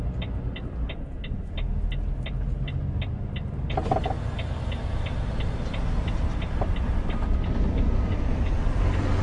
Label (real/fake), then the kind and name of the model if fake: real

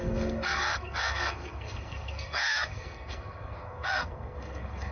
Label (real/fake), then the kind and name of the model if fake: fake, codec, SNAC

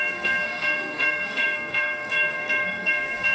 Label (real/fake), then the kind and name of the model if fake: fake, codec, SNAC